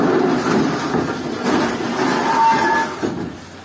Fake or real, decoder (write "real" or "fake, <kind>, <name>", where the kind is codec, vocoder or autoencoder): real